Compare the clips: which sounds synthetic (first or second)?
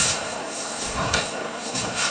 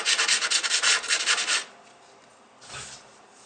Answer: first